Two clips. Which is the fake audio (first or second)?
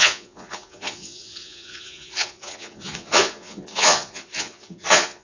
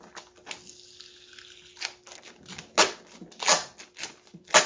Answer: first